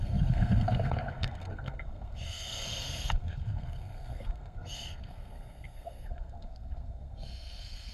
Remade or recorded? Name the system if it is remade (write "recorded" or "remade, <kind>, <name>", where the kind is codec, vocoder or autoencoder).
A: remade, codec, SNAC